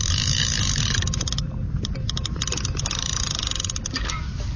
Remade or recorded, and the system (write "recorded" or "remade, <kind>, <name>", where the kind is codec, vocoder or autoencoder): recorded